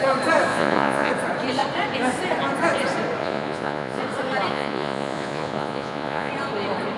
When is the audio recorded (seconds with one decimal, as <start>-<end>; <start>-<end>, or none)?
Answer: 0.0-0.5; 1.1-3.2; 4.0-4.5; 6.3-7.0